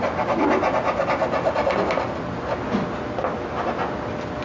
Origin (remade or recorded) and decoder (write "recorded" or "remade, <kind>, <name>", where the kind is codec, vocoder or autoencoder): recorded